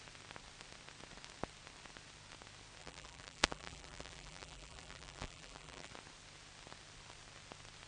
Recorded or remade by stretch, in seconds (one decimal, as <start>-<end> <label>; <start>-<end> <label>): 0.0-2.8 recorded; 2.8-5.9 remade; 5.9-7.9 recorded